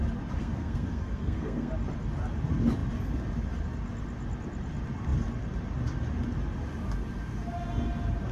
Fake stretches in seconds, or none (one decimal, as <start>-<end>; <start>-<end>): 0.4-1.7